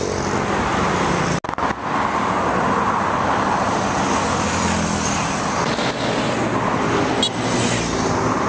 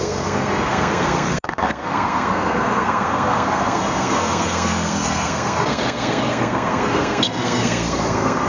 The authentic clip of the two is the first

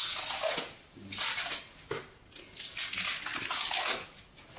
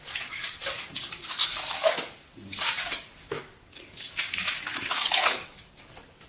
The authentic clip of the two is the first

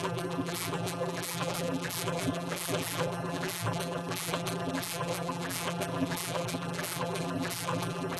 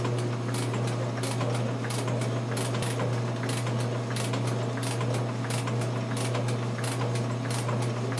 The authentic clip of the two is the second